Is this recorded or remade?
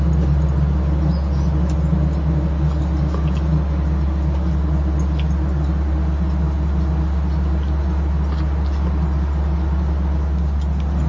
recorded